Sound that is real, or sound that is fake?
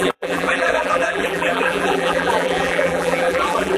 fake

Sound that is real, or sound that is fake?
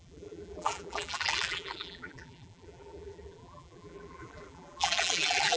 fake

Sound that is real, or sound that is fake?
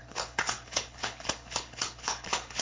fake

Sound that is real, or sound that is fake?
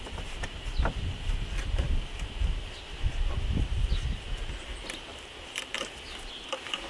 real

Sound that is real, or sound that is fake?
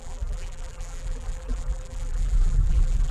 fake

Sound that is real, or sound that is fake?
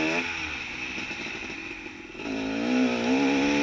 real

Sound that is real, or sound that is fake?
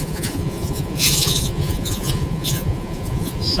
fake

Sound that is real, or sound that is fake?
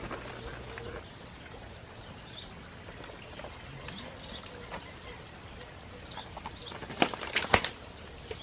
real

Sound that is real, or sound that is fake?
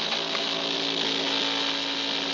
real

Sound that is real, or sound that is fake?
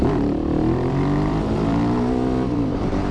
fake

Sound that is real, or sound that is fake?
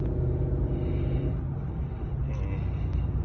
real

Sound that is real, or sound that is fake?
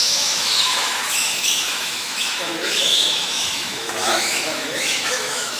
fake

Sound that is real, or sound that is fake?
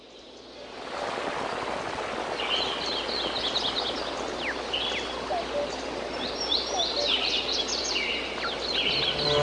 real